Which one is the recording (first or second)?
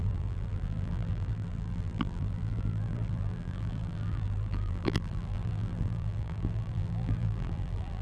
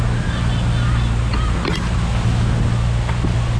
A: second